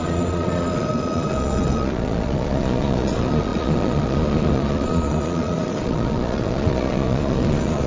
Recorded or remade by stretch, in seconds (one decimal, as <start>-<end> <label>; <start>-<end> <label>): 0.0-7.9 remade